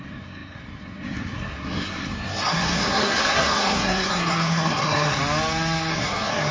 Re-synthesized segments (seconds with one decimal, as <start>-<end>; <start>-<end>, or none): 0.0-5.2; 5.9-6.5